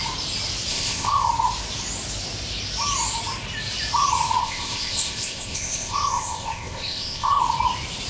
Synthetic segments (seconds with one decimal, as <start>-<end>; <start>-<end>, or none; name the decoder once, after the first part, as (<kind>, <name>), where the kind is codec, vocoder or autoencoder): 0.7-1.3 (codec, ZipCodec); 4.4-7.4